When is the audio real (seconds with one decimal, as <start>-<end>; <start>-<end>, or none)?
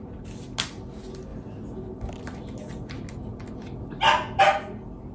0.0-5.1